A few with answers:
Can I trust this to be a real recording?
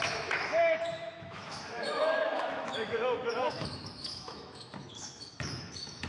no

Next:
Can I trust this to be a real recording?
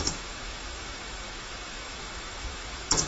no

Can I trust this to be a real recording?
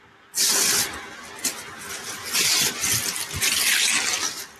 yes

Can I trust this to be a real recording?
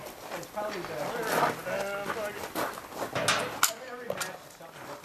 yes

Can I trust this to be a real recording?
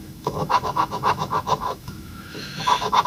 no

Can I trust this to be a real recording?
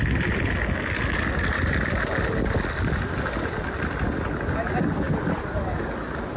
yes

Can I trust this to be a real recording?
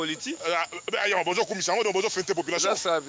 no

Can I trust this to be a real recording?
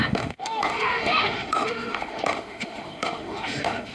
no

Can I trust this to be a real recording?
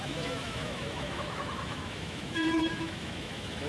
no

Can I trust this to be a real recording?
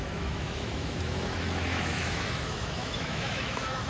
no